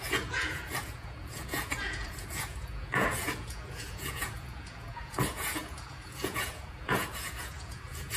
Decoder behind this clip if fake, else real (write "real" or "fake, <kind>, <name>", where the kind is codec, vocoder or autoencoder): fake, vocoder, Vocos